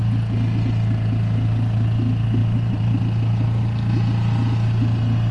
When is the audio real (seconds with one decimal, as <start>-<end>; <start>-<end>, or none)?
0.0-2.4; 3.0-5.3